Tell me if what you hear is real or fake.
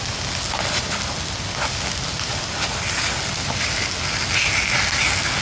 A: real